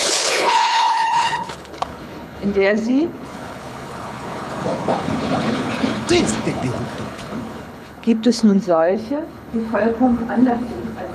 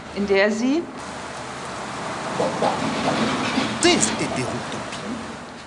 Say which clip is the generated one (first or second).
first